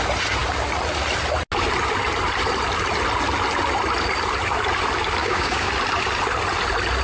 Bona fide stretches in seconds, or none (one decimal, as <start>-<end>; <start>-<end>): 0.0-5.2; 5.7-7.0

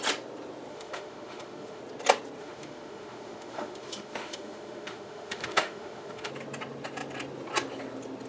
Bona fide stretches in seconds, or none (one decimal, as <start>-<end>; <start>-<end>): 0.0-0.7; 1.8-2.4; 6.3-8.3

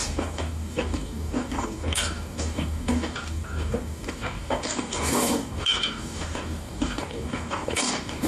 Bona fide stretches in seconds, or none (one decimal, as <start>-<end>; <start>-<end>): none

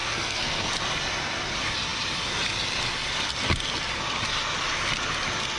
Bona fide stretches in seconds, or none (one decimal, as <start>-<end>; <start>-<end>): 0.7-5.6